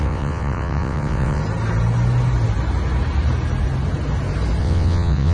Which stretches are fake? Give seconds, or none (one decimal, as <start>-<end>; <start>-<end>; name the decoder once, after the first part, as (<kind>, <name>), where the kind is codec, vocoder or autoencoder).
0.0-1.4 (vocoder, WaveNeXt); 4.6-5.3